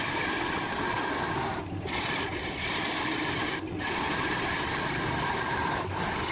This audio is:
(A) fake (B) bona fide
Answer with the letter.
A